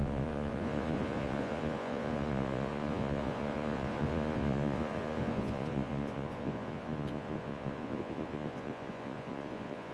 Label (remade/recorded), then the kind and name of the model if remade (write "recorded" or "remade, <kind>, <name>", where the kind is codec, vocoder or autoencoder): remade, vocoder, Vocos